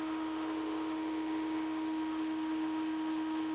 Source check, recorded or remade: remade